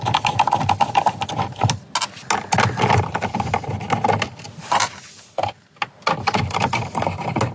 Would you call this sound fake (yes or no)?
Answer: no